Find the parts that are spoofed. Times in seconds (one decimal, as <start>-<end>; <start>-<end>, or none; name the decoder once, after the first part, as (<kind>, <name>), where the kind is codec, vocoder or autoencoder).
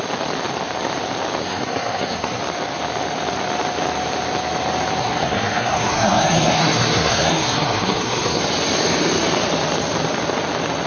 1.4-2.4 (codec, SNAC); 5.0-8.4